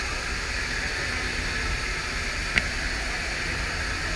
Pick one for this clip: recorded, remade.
recorded